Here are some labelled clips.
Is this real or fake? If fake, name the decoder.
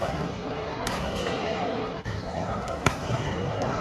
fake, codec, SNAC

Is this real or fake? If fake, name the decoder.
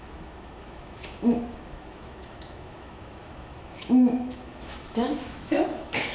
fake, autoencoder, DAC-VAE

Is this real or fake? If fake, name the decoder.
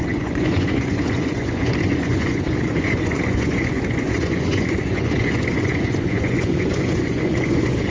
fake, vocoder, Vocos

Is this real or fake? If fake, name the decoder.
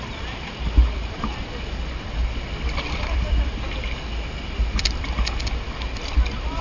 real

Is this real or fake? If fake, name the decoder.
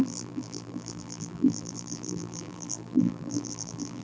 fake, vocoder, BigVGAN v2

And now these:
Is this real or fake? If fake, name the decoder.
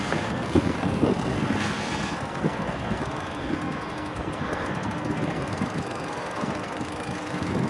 fake, codec, SNAC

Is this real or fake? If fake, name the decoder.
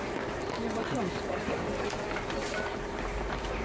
fake, vocoder, BigVGAN v2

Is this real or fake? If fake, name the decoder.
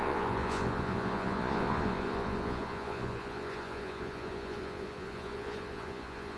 fake, vocoder, Vocos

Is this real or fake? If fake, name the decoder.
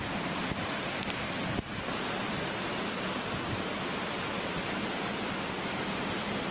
real